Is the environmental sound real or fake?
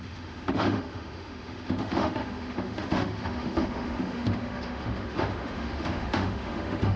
fake